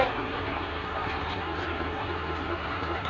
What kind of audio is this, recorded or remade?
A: remade